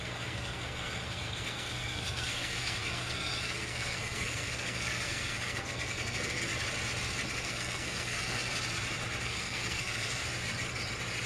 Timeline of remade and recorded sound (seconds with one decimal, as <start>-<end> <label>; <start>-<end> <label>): 0.0-6.5 remade; 6.5-7.3 recorded; 7.3-8.5 remade; 8.5-9.2 recorded; 9.2-10.2 remade; 10.2-11.3 recorded